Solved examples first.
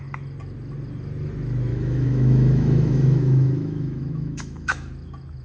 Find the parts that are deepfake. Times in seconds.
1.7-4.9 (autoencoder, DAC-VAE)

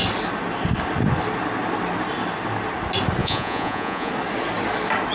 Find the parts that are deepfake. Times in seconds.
3.2-4.1 (vocoder, Vocos)

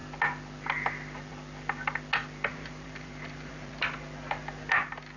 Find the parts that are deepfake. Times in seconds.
2.5-3.7 (vocoder, BigVGAN v2)

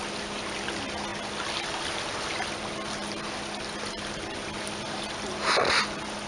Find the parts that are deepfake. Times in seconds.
none

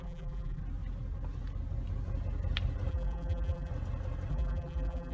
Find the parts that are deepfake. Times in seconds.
0.0-0.6 (vocoder, BigVGAN v2); 2.9-3.7; 4.3-5.1